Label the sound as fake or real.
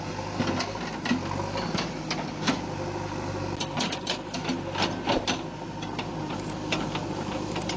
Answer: real